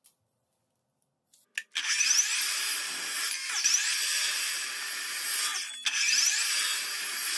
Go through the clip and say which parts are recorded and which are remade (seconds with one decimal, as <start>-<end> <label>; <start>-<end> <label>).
0.0-7.4 recorded